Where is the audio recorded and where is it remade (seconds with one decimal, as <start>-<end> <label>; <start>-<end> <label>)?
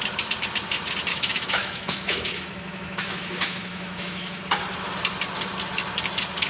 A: 0.0-1.1 recorded; 1.1-4.4 remade; 4.4-6.5 recorded